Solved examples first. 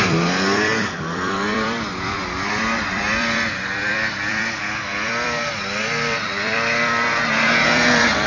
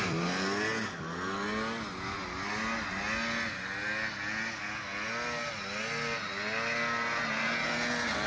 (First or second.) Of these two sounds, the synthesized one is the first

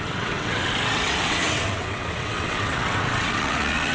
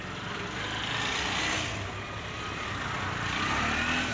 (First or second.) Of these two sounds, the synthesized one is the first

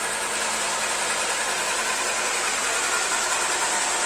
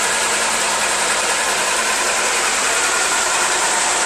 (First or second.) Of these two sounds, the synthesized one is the second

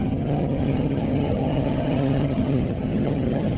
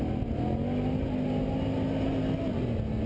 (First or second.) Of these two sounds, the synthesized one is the first